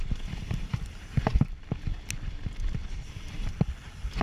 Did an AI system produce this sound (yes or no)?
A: no